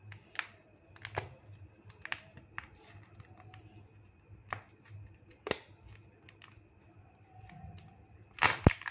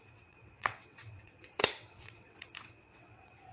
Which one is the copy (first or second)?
second